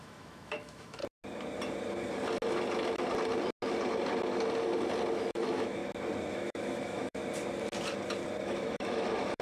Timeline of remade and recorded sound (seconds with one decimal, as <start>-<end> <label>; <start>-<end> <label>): 0.0-1.0 remade; 1.0-5.1 recorded; 5.1-5.8 remade; 5.8-6.3 recorded; 6.3-7.2 remade; 7.2-8.4 recorded; 8.4-9.4 remade

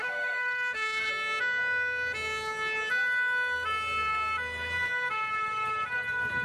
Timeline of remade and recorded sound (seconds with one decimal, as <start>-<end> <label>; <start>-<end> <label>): 0.0-1.1 remade; 1.1-6.4 recorded